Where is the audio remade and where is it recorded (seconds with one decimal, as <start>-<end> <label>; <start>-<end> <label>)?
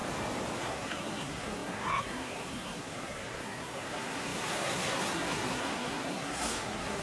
0.0-0.6 recorded; 0.6-7.0 remade